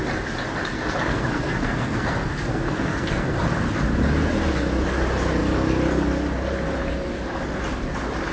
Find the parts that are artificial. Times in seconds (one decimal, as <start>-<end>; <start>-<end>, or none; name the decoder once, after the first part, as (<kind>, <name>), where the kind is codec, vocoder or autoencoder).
0.6-3.4 (codec, SNAC)